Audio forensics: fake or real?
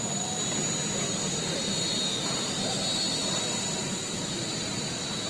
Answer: real